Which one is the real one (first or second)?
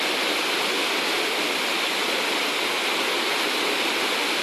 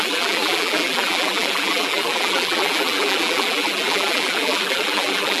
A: first